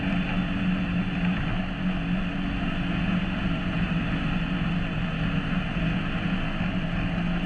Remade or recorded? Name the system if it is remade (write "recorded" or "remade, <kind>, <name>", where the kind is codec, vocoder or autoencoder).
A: recorded